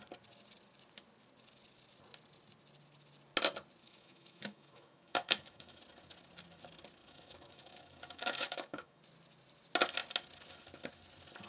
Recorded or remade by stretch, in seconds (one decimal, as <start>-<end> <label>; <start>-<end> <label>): 0.0-3.8 recorded; 3.8-5.8 remade; 5.8-7.0 recorded; 7.0-9.0 remade; 9.0-11.5 recorded